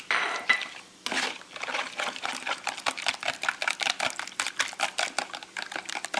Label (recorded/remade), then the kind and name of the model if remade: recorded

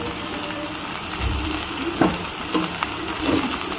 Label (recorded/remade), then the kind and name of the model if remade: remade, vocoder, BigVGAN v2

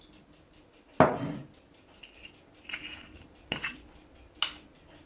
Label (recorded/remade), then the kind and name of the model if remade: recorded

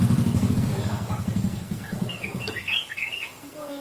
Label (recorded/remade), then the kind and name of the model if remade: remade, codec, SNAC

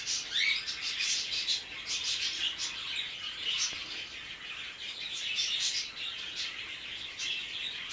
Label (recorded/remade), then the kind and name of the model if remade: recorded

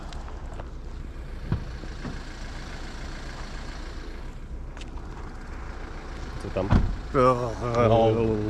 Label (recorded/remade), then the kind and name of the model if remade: recorded